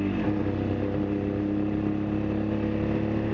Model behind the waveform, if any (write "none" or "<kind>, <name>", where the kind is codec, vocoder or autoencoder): none